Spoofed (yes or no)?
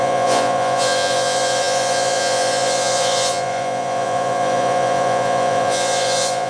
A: yes